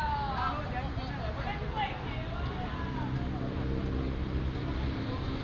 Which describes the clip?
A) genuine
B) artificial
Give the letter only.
A